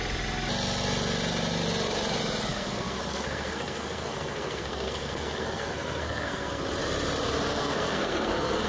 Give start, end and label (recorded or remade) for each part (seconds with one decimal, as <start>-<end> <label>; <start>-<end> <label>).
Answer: 0.0-2.5 recorded; 2.5-6.6 remade; 6.6-7.5 recorded; 7.5-8.7 remade